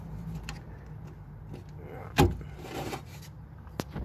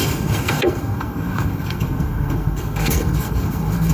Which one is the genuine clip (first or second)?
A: first